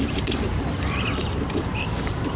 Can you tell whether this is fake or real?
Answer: fake